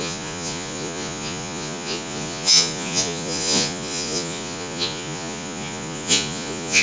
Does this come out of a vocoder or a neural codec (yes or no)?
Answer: yes